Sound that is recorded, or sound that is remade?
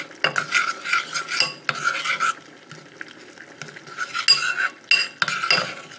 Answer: recorded